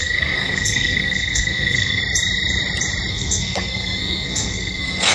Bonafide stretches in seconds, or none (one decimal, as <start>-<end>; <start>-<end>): 2.0-3.1